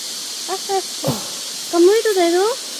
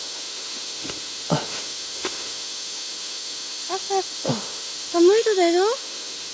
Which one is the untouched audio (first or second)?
first